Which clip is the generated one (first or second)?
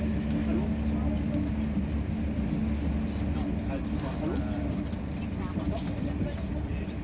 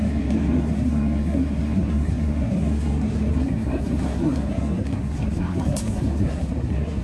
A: second